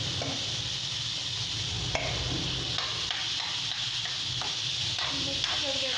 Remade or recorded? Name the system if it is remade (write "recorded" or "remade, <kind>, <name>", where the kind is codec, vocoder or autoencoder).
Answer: recorded